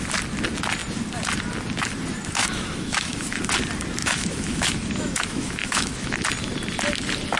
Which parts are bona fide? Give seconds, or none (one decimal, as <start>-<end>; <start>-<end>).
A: 0.0-2.4; 3.4-4.0; 6.2-7.4

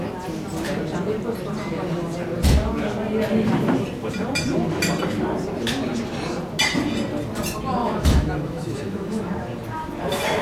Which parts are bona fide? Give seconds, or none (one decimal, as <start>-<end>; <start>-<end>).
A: 0.0-7.8; 9.2-10.4